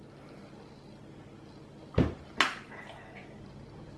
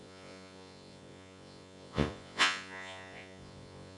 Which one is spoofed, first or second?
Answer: second